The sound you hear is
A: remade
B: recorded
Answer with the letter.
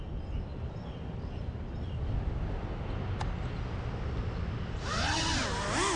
B